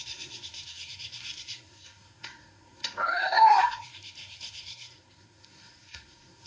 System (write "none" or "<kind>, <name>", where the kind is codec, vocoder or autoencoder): codec, SNAC